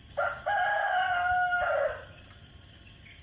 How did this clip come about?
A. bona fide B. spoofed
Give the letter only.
A